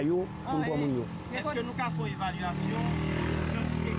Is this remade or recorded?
recorded